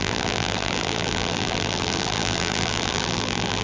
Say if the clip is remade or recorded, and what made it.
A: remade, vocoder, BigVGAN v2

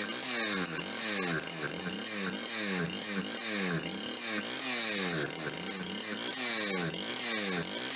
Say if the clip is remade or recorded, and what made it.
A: recorded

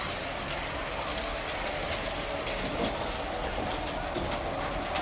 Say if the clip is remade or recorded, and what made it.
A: recorded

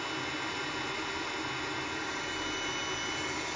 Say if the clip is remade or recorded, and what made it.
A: recorded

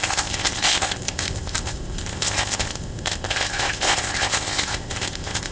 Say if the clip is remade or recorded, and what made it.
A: remade, codec, ZipCodec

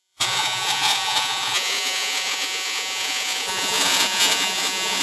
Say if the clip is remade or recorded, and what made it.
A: remade, vocoder, Vocos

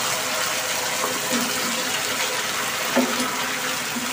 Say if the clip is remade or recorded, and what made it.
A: recorded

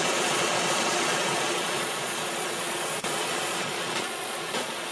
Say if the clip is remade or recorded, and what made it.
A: remade, vocoder, Vocos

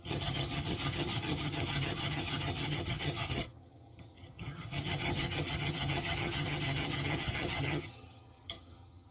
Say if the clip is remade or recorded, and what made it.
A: remade, vocoder, HiFi-GAN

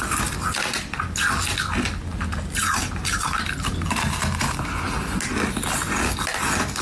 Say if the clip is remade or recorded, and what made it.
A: recorded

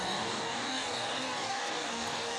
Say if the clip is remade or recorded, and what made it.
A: remade, codec, DAC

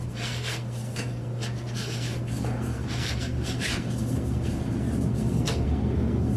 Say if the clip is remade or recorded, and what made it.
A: remade, codec, SNAC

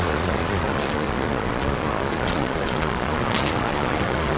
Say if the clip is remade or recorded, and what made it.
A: remade, vocoder, Vocos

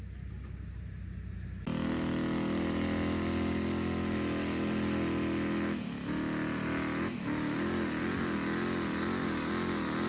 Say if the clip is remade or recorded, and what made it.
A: recorded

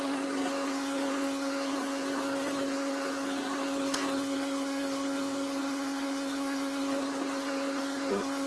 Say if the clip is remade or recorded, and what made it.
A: remade, codec, SNAC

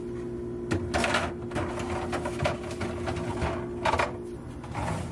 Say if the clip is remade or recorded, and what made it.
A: recorded